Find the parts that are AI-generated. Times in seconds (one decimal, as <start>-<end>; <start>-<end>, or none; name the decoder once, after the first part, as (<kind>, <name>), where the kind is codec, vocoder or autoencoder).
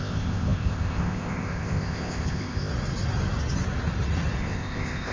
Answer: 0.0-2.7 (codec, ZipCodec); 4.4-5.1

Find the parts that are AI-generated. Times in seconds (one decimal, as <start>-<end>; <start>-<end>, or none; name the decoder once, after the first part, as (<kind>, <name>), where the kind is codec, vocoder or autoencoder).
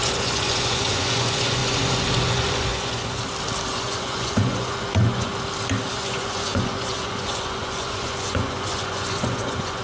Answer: 0.0-3.2 (vocoder, Vocos); 3.7-5.3; 5.9-9.8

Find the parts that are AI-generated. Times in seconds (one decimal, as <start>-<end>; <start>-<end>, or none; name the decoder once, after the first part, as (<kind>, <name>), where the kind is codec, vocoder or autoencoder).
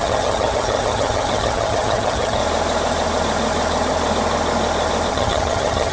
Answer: 0.0-2.4 (vocoder, HiFi-GAN); 5.1-5.9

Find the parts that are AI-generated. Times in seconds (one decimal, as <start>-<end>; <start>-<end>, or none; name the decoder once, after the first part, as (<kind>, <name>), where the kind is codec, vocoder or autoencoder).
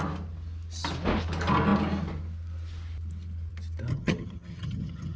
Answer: 3.9-5.2 (vocoder, HiFi-GAN)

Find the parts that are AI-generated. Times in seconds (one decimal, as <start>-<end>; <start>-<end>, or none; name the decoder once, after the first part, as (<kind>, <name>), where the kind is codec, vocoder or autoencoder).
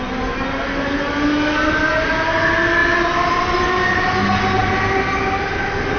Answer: none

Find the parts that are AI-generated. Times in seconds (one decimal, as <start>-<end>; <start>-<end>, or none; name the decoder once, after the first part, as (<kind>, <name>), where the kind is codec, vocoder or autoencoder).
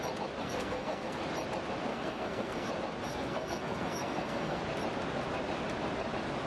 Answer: 0.4-1.2 (codec, SNAC); 1.9-2.7; 3.1-4.6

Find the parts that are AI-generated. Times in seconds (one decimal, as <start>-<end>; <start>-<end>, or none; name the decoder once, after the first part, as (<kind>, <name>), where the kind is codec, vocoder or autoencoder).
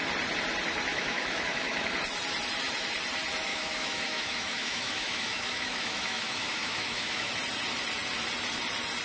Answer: 0.9-1.9 (autoencoder, DAC-VAE); 3.5-7.3